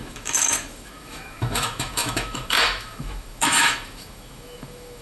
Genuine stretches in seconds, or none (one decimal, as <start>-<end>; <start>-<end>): none